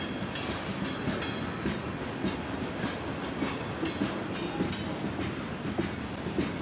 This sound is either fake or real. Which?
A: real